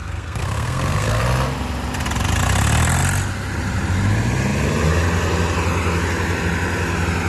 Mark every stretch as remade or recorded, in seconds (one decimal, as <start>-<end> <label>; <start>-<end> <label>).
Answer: 0.0-1.2 remade; 1.2-7.3 recorded